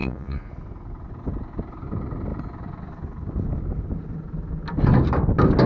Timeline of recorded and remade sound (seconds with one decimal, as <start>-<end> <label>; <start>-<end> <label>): 0.0-0.5 remade; 0.5-5.7 recorded